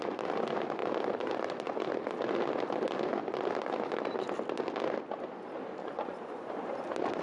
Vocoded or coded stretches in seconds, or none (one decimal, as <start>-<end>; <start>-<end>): 5.8-6.5